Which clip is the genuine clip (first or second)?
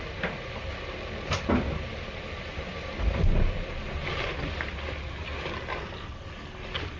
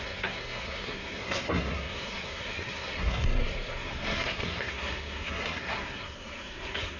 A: first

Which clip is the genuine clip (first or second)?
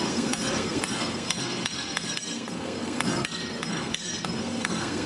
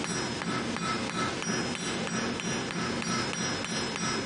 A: second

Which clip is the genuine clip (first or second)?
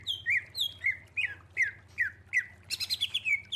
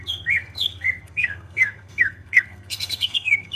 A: first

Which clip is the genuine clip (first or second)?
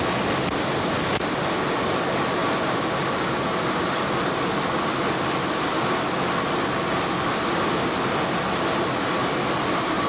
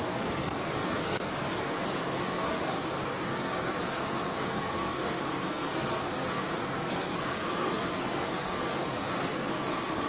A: first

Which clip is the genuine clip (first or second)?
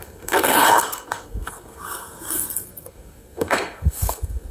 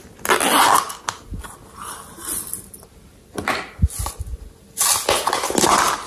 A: second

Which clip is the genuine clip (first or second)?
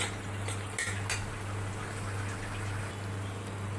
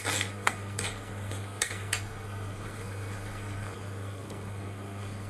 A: first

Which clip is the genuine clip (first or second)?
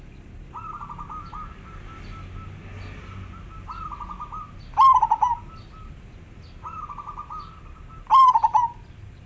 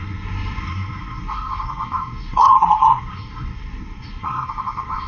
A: first